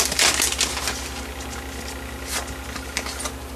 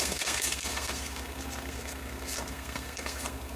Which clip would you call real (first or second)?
first